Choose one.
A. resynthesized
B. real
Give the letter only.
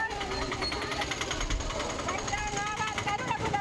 A